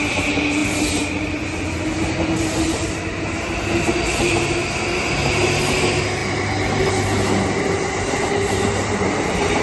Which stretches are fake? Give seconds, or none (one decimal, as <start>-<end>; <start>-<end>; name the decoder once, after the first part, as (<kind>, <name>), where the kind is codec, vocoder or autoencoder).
none